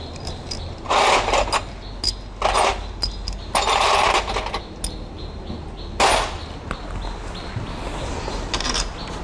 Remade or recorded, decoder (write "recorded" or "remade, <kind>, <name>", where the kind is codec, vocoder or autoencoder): recorded